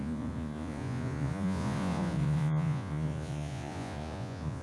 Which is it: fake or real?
fake